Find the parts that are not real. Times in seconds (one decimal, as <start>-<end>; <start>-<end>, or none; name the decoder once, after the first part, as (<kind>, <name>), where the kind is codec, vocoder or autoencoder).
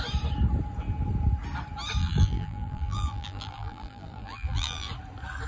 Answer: 2.0-4.9 (vocoder, BigVGAN v2)